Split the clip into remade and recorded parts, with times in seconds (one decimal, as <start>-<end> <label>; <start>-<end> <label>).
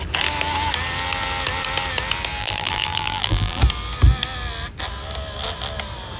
0.0-2.4 recorded; 2.4-3.6 remade; 3.6-6.2 recorded